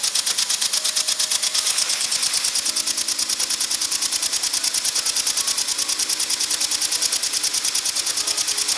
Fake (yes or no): no